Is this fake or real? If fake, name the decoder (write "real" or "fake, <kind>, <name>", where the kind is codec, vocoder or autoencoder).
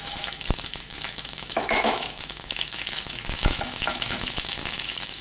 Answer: fake, autoencoder, DAC-VAE